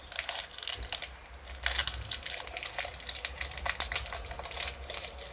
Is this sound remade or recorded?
recorded